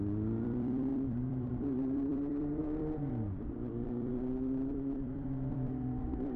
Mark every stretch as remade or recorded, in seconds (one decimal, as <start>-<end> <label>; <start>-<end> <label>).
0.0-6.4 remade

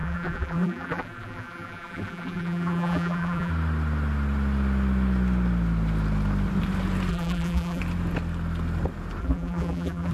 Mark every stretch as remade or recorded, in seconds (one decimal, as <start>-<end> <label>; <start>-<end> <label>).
0.0-3.5 remade; 3.5-7.1 recorded; 7.1-7.8 remade; 7.8-9.2 recorded; 9.2-10.1 remade

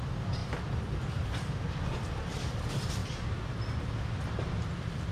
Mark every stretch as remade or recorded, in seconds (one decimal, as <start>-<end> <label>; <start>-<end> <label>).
0.0-3.0 remade; 3.0-4.1 recorded; 4.1-5.1 remade

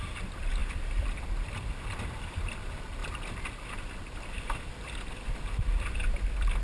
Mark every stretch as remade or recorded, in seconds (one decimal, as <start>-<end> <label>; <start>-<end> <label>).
0.0-6.6 recorded